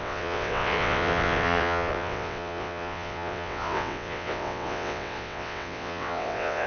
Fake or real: fake